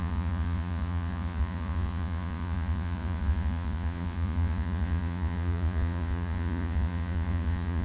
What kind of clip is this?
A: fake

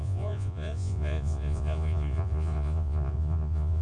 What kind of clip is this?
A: fake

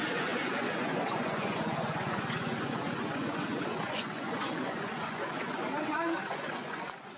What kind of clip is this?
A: fake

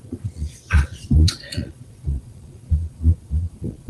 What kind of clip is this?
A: fake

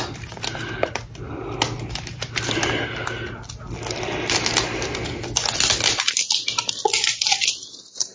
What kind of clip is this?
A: real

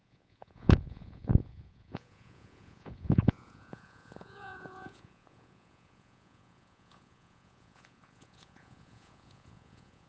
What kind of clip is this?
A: fake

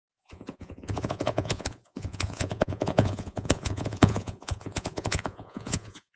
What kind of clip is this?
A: fake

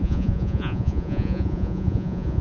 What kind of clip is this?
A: fake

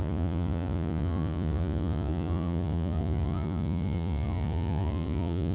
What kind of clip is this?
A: fake